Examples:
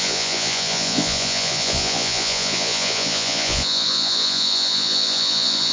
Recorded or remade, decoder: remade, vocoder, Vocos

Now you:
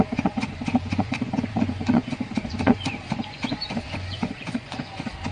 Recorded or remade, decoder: remade, vocoder, Vocos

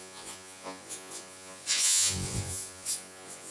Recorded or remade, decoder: remade, vocoder, Vocos